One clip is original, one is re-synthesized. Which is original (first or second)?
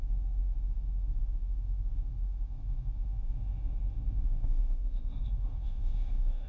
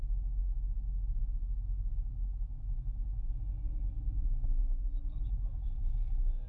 second